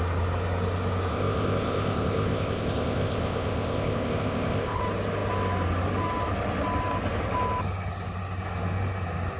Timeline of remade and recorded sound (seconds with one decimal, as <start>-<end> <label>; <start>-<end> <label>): 0.0-1.1 recorded; 1.1-4.8 remade; 4.8-9.4 recorded